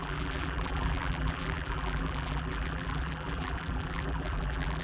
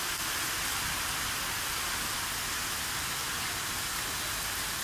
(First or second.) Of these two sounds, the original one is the second